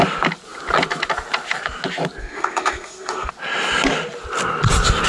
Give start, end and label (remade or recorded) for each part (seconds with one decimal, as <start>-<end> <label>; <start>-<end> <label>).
0.0-2.2 recorded; 2.2-3.3 remade; 3.3-5.1 recorded